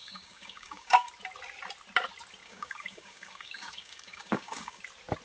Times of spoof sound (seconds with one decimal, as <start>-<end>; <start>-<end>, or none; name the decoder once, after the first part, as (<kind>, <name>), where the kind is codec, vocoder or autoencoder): 0.0-1.1 (codec, DAC); 2.4-4.8

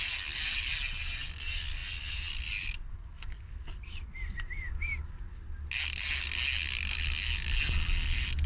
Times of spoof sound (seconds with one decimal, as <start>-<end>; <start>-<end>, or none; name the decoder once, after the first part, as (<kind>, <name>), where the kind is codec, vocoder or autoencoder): none